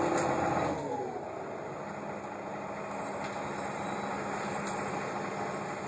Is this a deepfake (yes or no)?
no